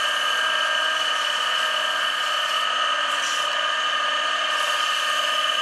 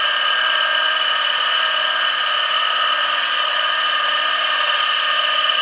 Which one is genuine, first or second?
first